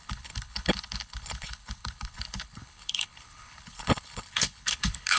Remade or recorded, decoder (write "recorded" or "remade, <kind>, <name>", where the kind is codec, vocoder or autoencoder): remade, codec, HILCodec